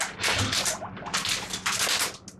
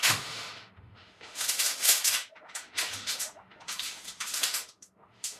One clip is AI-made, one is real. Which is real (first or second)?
first